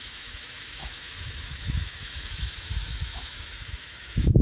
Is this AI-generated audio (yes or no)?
yes